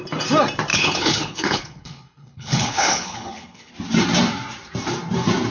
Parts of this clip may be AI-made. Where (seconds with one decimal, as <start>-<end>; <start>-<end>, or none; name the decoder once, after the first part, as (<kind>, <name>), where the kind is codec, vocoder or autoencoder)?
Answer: 0.7-3.7 (codec, HILCodec)